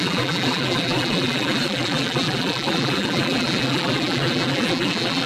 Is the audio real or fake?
fake